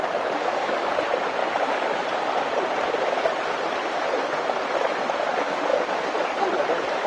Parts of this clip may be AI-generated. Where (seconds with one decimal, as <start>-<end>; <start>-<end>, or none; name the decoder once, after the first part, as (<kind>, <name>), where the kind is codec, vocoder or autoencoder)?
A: 0.4-0.9 (codec, DAC)